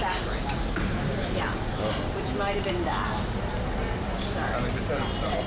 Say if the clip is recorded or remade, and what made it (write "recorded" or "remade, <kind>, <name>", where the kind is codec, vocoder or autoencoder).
recorded